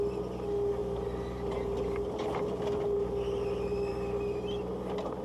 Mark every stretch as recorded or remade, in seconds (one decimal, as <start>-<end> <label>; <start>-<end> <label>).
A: 0.0-0.8 recorded; 0.8-3.9 remade; 3.9-5.2 recorded